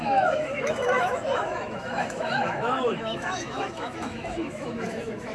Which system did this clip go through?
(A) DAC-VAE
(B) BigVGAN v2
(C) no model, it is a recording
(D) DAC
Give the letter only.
A